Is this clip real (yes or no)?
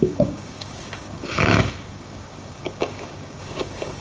no